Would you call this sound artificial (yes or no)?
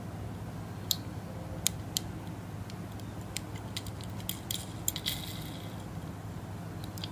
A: no